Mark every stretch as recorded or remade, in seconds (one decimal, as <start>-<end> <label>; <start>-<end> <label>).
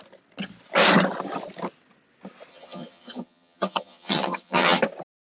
0.0-2.5 recorded; 2.5-4.8 remade; 4.8-5.2 recorded